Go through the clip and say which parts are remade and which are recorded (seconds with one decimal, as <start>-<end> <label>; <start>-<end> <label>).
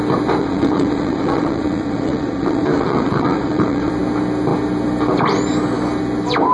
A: 0.0-0.4 recorded; 0.4-3.9 remade; 3.9-6.5 recorded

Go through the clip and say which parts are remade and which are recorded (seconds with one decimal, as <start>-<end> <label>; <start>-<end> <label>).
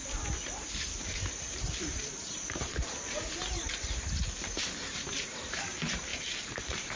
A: 0.0-3.2 remade; 3.2-4.6 recorded; 4.6-5.5 remade; 5.5-6.1 recorded; 6.1-7.0 remade